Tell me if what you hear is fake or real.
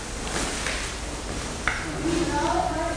real